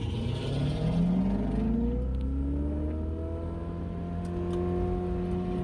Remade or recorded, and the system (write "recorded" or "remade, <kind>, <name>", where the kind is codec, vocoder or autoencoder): recorded